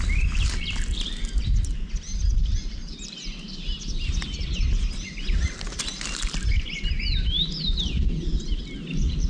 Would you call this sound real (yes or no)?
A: yes